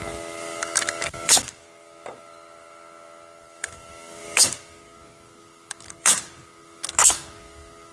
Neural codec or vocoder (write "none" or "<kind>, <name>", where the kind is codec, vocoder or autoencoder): codec, DAC